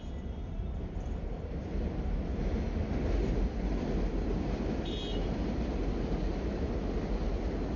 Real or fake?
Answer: real